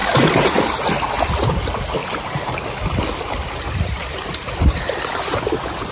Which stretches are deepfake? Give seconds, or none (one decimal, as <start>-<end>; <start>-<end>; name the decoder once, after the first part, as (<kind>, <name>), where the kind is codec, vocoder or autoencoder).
0.0-0.9 (vocoder, BigVGAN v2); 2.0-5.5